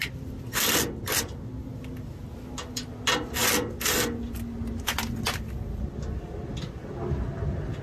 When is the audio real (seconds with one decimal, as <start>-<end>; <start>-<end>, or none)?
0.0-7.8